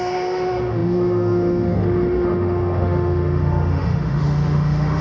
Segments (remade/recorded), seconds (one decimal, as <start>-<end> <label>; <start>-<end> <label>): 0.0-5.0 remade